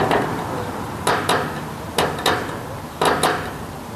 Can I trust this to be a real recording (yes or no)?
yes